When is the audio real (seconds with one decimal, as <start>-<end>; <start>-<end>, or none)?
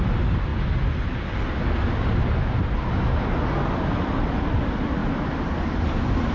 0.0-6.3